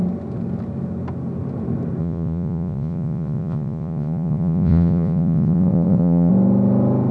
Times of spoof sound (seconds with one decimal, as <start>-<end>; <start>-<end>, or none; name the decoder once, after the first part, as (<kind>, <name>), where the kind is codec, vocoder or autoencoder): 2.0-6.3 (vocoder, Vocos)